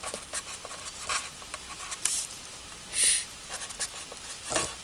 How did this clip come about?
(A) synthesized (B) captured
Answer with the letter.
B